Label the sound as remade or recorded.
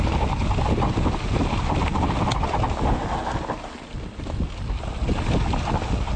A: recorded